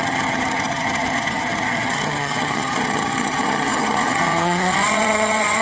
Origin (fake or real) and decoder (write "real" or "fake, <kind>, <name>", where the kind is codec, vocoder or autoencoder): fake, vocoder, HiFi-GAN